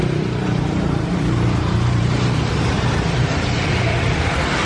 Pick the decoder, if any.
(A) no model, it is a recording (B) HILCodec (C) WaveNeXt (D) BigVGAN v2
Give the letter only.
D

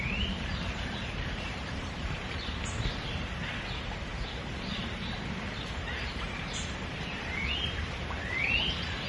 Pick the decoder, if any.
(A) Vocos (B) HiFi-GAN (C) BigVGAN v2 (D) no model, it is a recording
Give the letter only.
C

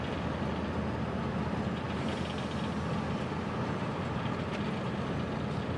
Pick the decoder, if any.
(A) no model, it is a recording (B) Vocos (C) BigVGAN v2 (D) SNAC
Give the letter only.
A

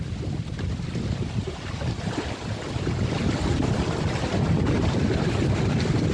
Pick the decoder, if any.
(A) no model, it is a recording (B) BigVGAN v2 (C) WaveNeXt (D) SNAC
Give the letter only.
A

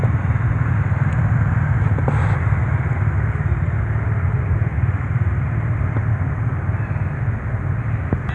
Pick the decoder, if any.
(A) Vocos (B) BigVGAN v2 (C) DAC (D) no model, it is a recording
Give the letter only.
D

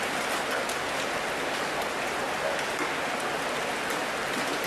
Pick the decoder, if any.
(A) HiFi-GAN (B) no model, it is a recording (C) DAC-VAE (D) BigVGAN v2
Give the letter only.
B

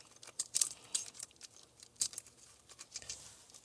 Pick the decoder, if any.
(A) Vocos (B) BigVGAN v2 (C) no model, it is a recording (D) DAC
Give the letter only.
B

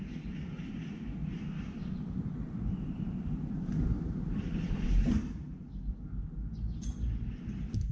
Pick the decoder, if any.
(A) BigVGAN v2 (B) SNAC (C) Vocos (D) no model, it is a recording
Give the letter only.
D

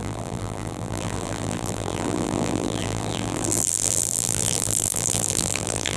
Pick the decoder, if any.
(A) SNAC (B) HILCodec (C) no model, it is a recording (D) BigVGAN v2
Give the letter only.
D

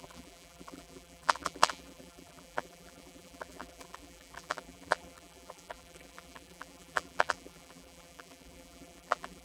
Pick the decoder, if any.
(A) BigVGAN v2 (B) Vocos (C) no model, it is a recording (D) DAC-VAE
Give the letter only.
A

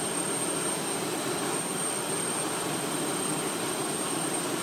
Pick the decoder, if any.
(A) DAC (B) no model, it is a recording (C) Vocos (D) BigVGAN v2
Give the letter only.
B